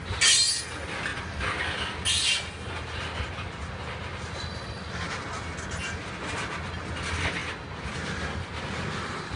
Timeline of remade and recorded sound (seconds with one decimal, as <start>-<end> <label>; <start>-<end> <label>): 0.0-9.4 recorded